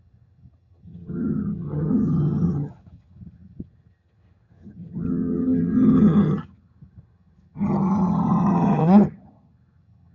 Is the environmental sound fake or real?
fake